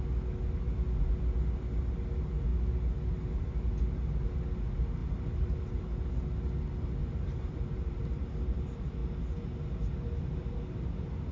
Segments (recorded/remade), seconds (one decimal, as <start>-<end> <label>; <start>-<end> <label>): 0.0-5.0 recorded; 5.0-6.1 remade; 6.1-7.0 recorded; 7.0-8.1 remade; 8.1-11.3 recorded

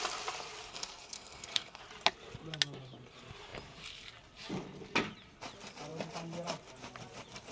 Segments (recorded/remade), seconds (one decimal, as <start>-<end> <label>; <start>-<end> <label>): 0.0-0.7 recorded; 0.7-1.8 remade; 1.8-7.5 recorded

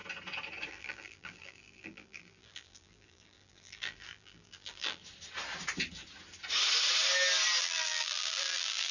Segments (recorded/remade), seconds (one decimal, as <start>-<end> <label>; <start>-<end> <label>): 0.0-0.7 recorded; 0.7-5.0 remade; 5.0-7.6 recorded; 7.6-8.9 remade

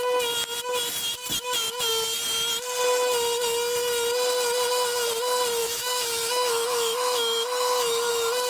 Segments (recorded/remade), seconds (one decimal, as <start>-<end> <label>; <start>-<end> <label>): 0.0-5.6 recorded; 5.6-8.1 remade; 8.1-8.5 recorded

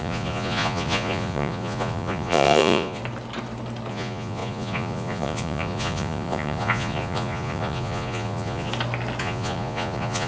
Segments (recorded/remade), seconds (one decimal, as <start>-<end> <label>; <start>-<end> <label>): 0.0-3.0 remade; 3.0-3.9 recorded; 3.9-8.7 remade; 8.7-9.2 recorded; 9.2-10.3 remade

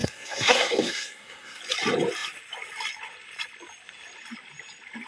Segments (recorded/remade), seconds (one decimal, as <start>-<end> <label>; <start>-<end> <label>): 0.0-1.6 remade; 1.6-5.1 recorded

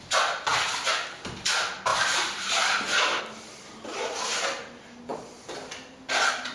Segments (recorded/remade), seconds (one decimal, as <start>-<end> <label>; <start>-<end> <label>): 0.0-1.9 recorded; 1.9-3.2 remade; 3.2-6.5 recorded

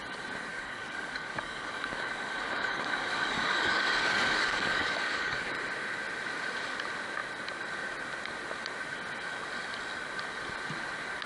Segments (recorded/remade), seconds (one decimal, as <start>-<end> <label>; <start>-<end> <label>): 0.0-0.5 recorded; 0.5-5.5 remade; 5.5-11.3 recorded